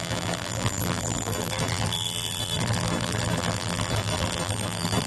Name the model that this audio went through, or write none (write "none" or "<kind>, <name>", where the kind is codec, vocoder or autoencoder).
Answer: vocoder, BigVGAN v2